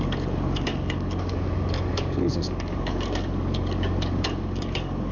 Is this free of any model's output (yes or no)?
no